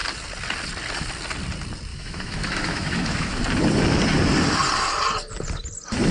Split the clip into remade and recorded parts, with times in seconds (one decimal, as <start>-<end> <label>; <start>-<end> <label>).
0.0-1.9 recorded; 1.9-3.4 remade; 3.4-6.1 recorded